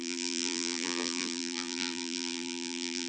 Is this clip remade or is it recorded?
remade